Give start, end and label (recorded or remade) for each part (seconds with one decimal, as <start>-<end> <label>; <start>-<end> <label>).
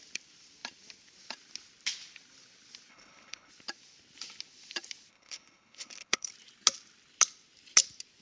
0.0-2.9 recorded; 2.9-3.5 remade; 3.5-5.1 recorded; 5.1-6.3 remade; 6.3-8.2 recorded